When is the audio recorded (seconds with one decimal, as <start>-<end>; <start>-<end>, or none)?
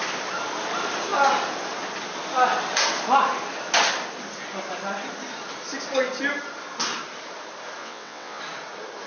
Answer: 0.0-7.8; 8.4-9.1